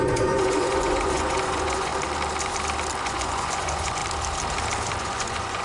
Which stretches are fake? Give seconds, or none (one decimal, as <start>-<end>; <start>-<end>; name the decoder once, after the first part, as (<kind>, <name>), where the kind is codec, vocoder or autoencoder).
0.0-1.9 (vocoder, Vocos); 3.0-4.0; 5.0-5.6